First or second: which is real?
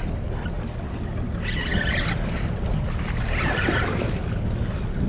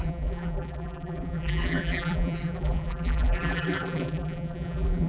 first